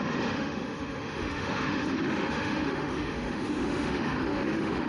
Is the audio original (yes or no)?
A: no